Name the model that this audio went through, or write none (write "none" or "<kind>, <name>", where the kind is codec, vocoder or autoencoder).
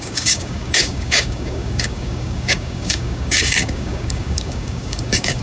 codec, DAC